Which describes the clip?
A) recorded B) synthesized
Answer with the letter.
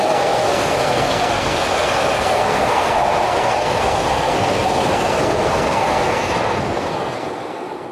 B